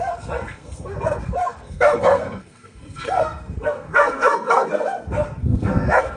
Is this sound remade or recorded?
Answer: remade